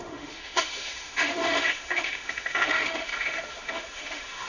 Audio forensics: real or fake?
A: fake